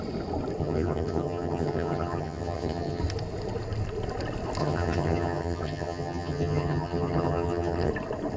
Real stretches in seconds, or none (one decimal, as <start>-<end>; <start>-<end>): 0.0-0.6; 3.0-4.6; 7.9-8.4